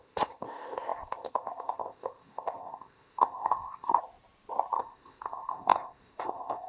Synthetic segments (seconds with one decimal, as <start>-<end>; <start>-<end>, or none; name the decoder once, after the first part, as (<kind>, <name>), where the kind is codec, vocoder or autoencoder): 0.0-4.0 (codec, ZipCodec); 4.8-6.7